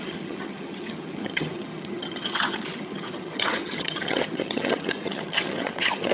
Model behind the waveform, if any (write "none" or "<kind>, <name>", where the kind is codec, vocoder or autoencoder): vocoder, HiFi-GAN